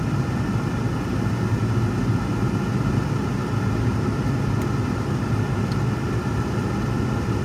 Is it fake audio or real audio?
real